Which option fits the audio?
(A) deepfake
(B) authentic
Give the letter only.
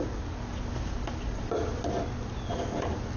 B